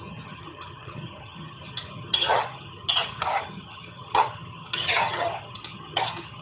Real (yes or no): no